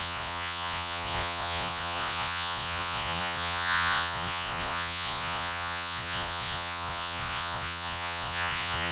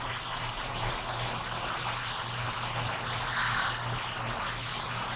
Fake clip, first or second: first